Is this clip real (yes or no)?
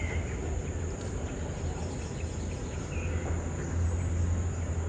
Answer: yes